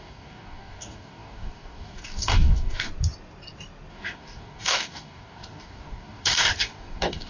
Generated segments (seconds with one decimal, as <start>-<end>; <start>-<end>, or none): 0.0-2.9; 3.9-7.3